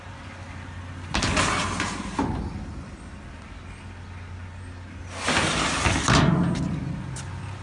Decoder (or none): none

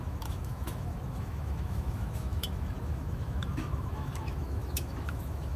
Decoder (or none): autoencoder, DAC-VAE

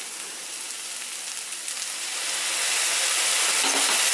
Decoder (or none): none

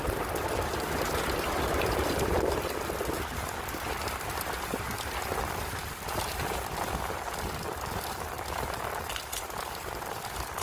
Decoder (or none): none